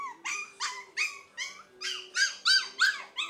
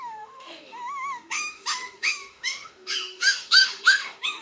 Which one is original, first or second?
first